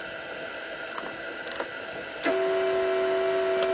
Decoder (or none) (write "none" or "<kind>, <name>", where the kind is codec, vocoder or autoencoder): none